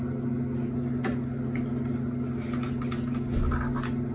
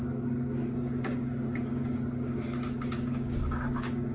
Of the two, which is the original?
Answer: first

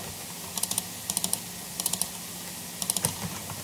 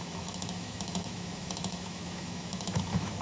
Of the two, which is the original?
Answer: first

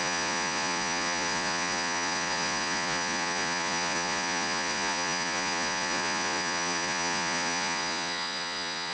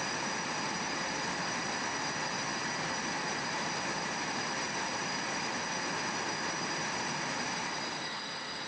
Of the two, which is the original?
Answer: second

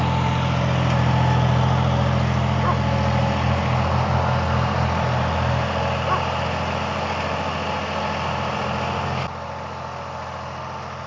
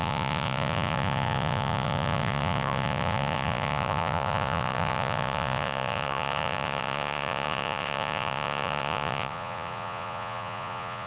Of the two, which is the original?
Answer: first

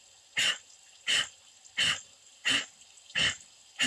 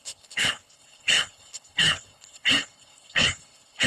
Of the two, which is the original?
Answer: first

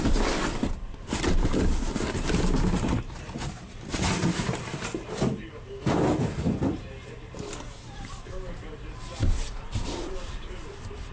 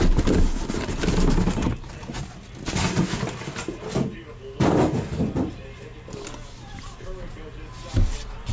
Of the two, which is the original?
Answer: second